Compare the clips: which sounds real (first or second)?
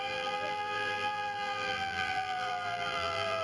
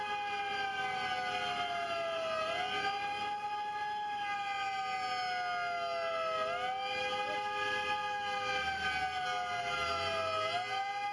second